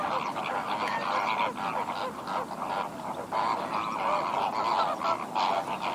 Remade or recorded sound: recorded